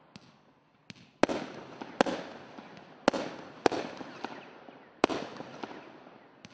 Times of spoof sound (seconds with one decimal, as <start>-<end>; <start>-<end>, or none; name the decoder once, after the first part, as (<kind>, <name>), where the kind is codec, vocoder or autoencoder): none